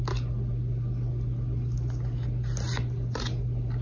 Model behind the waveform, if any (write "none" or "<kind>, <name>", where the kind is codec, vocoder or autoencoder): none